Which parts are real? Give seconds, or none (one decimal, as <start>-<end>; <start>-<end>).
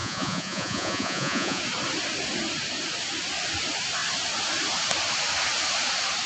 1.6-6.3